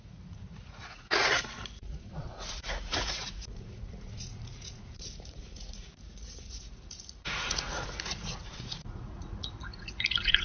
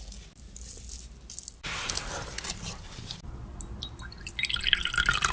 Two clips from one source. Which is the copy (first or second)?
first